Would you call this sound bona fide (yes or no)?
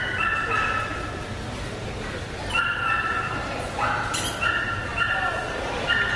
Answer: yes